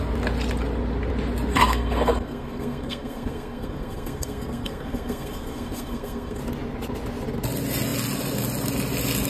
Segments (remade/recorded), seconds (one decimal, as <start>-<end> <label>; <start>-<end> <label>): 0.0-1.5 recorded; 1.5-6.4 remade; 6.4-9.3 recorded